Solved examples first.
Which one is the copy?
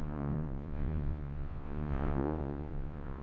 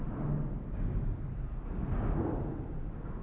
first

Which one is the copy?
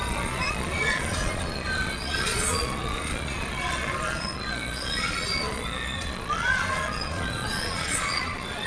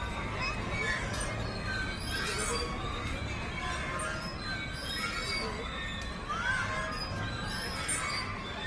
first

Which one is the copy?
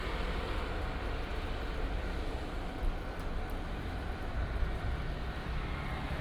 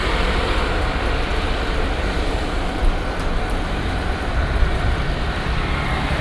second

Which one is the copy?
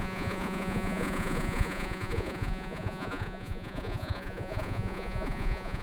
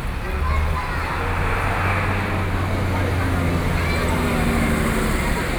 first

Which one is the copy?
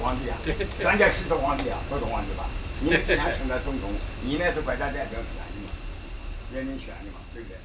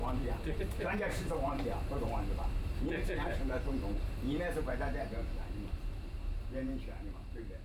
second